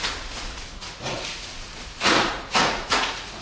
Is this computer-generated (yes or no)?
yes